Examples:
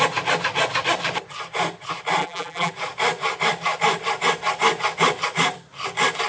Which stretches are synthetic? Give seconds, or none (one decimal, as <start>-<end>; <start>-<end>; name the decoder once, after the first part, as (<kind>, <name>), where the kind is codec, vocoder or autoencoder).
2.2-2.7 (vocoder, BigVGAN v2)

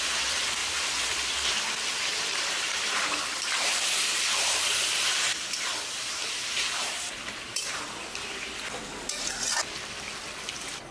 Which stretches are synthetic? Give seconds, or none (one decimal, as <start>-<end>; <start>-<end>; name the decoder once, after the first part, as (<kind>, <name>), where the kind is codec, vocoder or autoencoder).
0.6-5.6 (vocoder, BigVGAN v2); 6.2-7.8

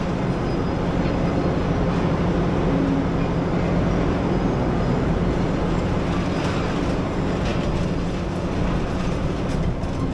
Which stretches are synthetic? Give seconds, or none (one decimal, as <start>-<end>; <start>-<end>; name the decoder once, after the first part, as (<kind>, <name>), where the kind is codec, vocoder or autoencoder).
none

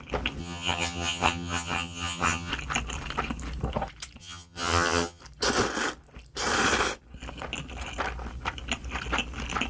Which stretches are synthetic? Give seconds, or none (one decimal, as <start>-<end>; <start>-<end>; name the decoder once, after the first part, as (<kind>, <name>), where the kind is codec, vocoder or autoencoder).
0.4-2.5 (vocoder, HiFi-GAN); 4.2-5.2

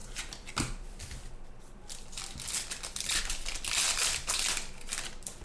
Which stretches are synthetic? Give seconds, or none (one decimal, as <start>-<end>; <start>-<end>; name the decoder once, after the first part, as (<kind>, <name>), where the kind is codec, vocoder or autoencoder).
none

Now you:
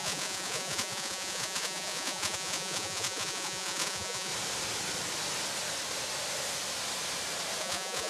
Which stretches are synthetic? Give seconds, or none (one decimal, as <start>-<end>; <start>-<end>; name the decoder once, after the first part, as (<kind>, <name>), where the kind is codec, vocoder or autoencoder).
0.0-4.3 (vocoder, Vocos); 7.6-8.1

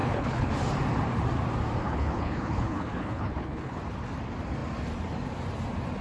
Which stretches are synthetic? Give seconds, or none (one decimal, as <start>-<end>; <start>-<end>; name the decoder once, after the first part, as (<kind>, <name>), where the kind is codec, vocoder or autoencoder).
0.0-0.5 (codec, HILCodec); 1.8-3.8

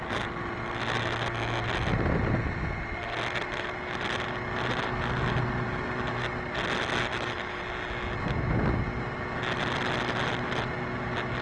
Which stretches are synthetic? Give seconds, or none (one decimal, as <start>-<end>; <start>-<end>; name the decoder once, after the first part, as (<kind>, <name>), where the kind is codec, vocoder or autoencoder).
7.1-7.6 (autoencoder, DAC-VAE)